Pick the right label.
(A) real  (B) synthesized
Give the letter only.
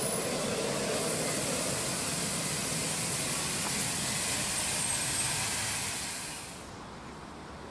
A